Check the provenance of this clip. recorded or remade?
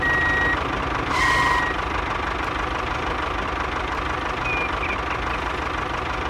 recorded